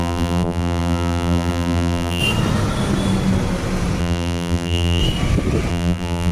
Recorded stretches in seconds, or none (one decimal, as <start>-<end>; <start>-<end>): 2.2-4.0; 5.0-5.7